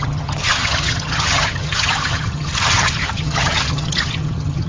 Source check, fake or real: fake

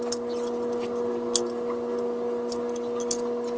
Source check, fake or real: real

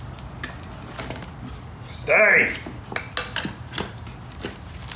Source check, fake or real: real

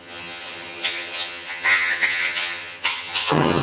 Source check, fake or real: fake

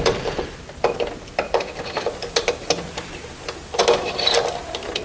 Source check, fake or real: real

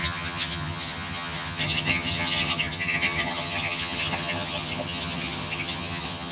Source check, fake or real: fake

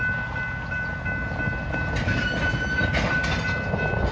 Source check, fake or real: real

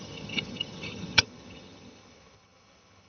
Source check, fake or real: fake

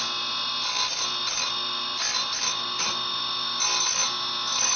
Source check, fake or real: real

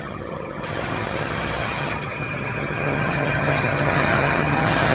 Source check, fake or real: fake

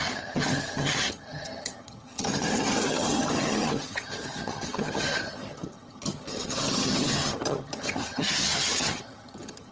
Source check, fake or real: fake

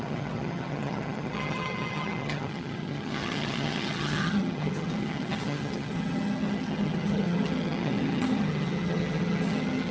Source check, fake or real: fake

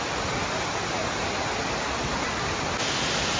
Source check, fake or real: real